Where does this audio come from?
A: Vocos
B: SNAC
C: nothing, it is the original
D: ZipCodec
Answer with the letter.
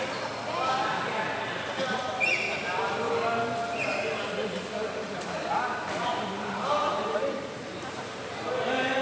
C